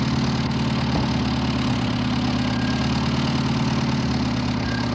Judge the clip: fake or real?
real